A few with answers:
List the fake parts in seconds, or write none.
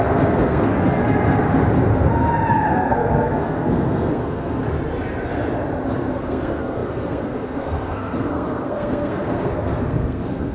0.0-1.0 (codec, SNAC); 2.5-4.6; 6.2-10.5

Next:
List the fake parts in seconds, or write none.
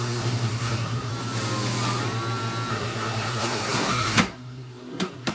0.0-1.1 (codec, SNAC); 2.7-5.3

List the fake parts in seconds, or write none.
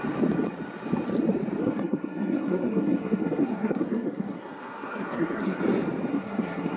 1.6-5.6 (codec, SNAC); 6.1-6.8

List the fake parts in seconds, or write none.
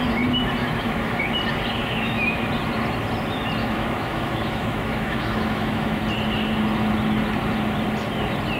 0.6-1.2 (autoencoder, DAC-VAE); 1.8-2.4; 3.6-6.0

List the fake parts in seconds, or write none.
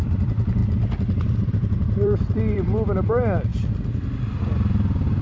0.0-0.6 (vocoder, BigVGAN v2); 1.5-5.2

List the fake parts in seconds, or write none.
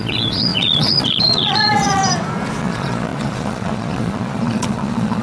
0.0-2.0 (vocoder, Vocos); 2.6-5.2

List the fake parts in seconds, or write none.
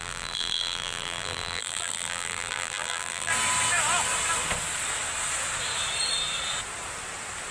0.0-3.3 (vocoder, BigVGAN v2)